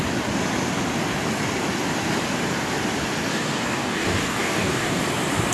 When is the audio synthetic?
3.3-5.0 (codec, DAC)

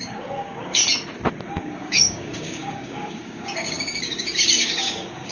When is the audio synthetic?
0.0-0.8 (codec, DAC); 1.5-5.3

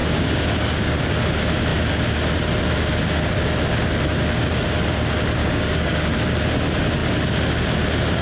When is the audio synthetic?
0.0-1.0 (codec, DAC); 5.4-6.1

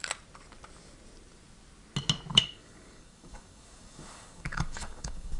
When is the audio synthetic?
2.3-5.4 (codec, DAC)

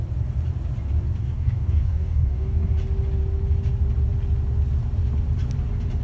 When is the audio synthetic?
1.2-2.7 (codec, DAC)

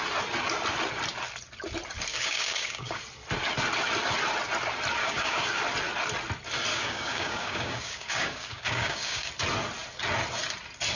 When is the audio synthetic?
2.1-3.0 (codec, DAC); 5.0-5.6; 6.7-9.3

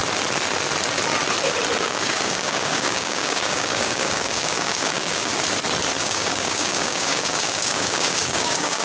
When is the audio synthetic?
1.8-5.3 (codec, DAC); 6.0-8.8